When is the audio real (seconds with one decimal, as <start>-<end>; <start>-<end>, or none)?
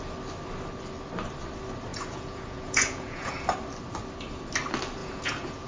0.0-1.9; 3.3-5.0